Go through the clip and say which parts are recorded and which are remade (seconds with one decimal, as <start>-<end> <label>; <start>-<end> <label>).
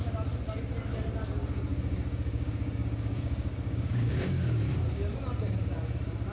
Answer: 0.0-1.7 recorded; 1.7-4.8 remade; 4.8-6.3 recorded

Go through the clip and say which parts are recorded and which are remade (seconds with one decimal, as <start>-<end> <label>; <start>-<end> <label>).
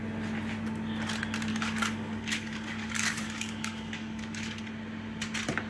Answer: 0.0-1.5 recorded; 1.5-4.6 remade; 4.6-5.7 recorded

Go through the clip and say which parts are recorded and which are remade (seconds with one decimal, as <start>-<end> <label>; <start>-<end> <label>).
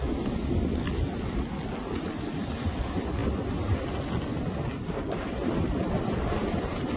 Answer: 0.0-7.0 recorded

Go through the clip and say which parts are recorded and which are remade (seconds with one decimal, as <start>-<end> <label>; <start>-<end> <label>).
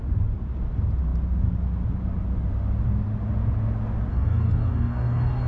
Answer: 0.0-4.1 recorded; 4.1-5.5 remade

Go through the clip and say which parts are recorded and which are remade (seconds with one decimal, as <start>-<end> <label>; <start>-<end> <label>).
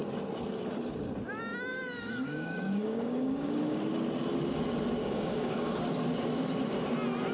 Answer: 0.0-1.7 recorded; 1.7-3.8 remade; 3.8-5.0 recorded; 5.0-5.8 remade; 5.8-7.3 recorded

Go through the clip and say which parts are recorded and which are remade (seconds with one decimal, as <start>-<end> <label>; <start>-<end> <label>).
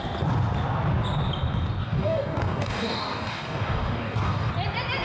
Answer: 0.0-1.8 recorded; 1.8-4.5 remade; 4.5-5.0 recorded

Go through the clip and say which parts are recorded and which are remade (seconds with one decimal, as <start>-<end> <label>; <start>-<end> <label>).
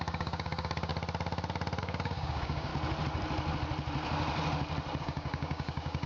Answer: 0.0-0.9 remade; 0.9-1.8 recorded; 1.8-2.7 remade; 2.7-5.0 recorded; 5.0-6.1 remade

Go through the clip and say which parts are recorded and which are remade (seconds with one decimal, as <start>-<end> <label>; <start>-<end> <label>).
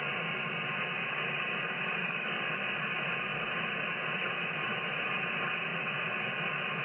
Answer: 0.0-2.0 recorded; 2.0-2.5 remade; 2.5-6.8 recorded